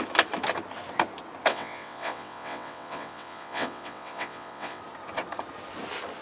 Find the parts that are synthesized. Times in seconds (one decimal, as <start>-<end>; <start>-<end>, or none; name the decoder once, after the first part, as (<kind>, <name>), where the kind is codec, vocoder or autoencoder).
1.5-4.8 (vocoder, WaveNeXt)